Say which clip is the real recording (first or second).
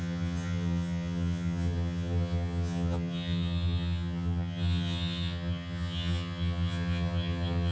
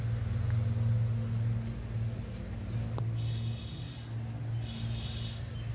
second